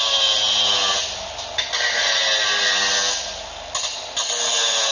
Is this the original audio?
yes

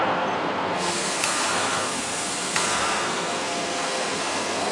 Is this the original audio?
no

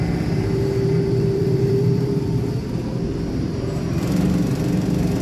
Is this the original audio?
no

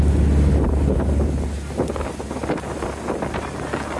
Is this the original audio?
yes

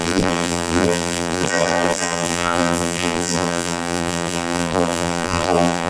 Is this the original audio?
no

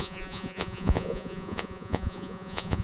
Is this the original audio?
no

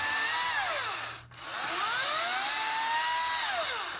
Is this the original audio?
yes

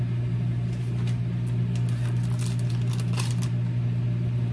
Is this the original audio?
yes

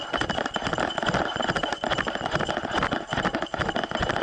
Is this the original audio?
yes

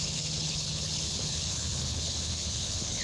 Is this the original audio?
no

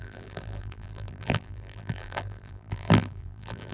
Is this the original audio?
no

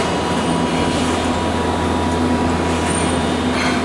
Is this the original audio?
yes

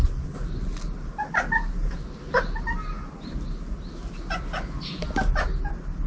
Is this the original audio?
yes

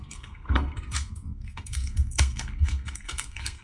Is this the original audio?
no